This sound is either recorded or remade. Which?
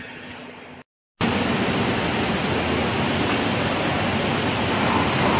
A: recorded